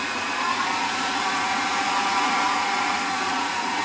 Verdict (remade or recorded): remade